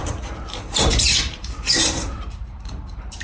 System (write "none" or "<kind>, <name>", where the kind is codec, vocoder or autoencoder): vocoder, BigVGAN v2